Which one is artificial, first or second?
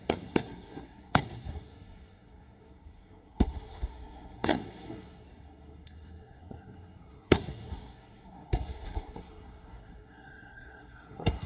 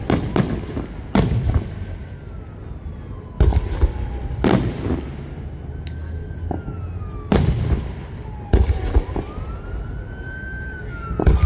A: first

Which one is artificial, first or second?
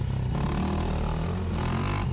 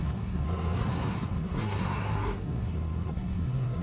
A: second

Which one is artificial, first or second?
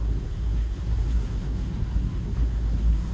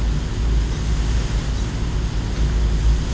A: first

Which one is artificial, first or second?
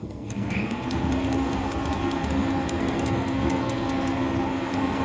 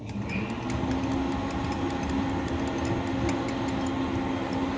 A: first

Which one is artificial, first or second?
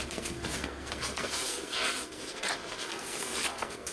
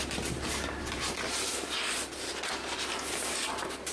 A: first